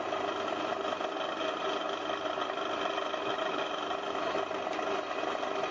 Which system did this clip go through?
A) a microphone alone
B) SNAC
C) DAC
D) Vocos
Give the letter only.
A